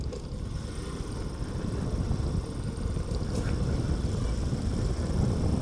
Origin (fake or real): real